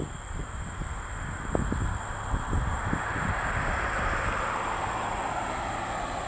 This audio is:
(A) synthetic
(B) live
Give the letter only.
B